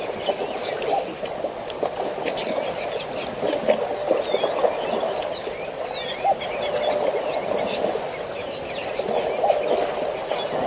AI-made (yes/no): no